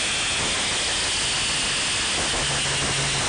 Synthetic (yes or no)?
no